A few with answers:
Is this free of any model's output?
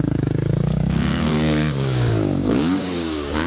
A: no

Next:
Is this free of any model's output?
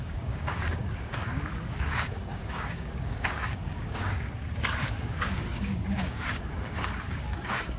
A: no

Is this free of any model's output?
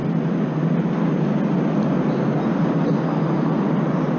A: yes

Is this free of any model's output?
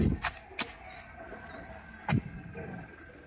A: yes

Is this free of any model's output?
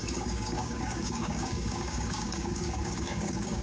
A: no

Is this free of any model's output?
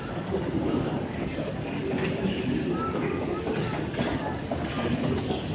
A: no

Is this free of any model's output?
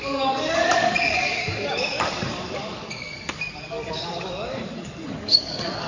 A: no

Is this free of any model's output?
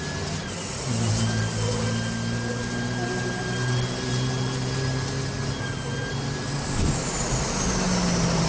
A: yes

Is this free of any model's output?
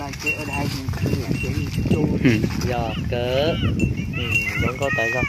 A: yes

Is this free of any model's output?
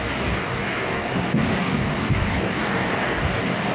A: no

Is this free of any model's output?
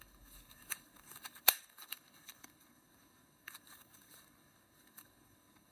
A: no